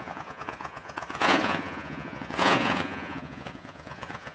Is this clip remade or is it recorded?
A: remade